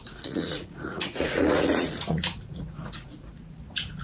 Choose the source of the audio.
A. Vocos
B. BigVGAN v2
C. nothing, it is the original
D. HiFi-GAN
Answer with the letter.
A